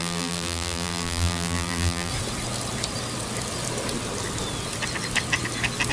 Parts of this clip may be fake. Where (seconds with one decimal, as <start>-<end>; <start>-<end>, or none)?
0.0-2.1